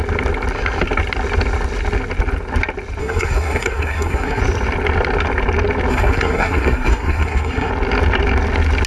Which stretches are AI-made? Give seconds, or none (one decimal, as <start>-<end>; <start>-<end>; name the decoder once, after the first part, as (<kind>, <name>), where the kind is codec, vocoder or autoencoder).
3.0-4.4 (codec, SNAC); 5.9-7.7